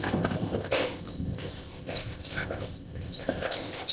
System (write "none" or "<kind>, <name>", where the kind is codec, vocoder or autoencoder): codec, ZipCodec